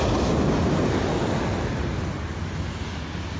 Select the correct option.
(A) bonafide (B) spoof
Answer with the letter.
A